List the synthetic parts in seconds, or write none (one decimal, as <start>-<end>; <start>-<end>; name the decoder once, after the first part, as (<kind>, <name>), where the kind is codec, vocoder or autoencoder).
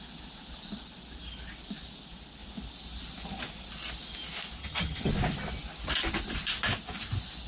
4.6-5.1 (vocoder, HiFi-GAN)